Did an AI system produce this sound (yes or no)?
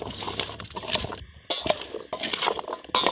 no